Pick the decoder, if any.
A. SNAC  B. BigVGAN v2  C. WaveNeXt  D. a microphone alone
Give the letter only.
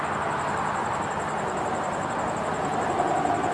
D